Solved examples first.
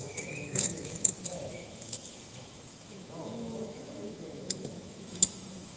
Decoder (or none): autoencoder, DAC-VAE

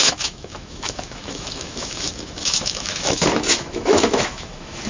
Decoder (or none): autoencoder, DAC-VAE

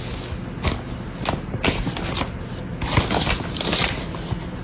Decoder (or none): none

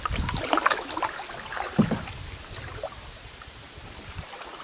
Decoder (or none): none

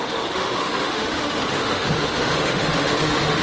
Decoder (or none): autoencoder, DAC-VAE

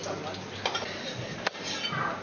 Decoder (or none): none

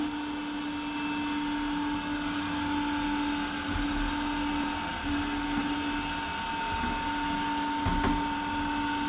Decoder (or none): none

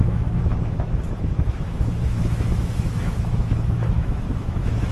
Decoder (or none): autoencoder, DAC-VAE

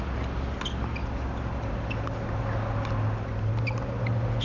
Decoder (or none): none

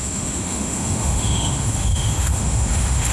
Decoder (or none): autoencoder, DAC-VAE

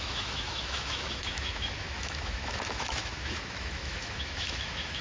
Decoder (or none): autoencoder, DAC-VAE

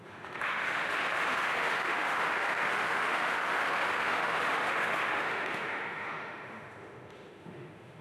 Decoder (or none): autoencoder, DAC-VAE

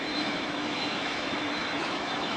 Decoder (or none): autoencoder, DAC-VAE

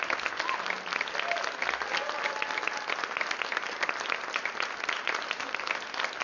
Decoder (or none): none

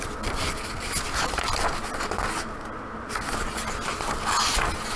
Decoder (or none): none